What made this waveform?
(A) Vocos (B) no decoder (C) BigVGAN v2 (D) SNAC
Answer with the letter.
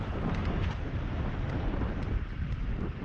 B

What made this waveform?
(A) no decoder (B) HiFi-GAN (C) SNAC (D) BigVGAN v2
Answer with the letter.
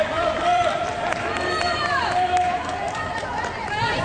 D